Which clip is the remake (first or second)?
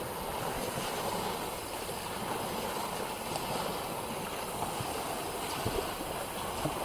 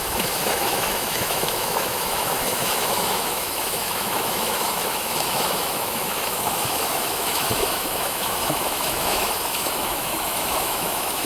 second